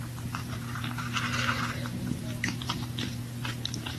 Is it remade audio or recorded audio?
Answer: remade